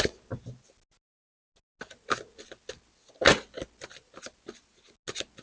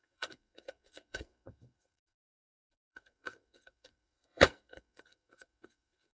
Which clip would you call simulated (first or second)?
second